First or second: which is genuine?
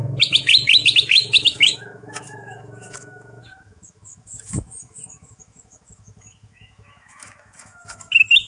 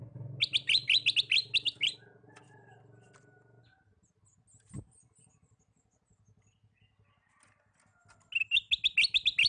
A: second